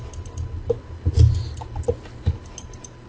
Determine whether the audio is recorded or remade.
recorded